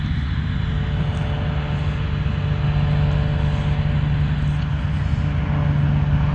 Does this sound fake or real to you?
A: real